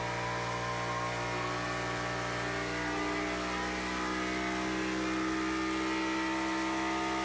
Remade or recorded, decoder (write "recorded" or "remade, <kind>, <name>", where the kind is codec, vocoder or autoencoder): recorded